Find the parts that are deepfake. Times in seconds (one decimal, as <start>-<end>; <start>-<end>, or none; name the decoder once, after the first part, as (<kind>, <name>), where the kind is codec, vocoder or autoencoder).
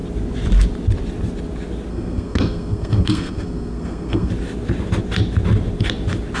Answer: 1.9-4.3 (codec, SNAC)